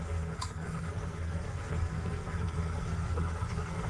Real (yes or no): no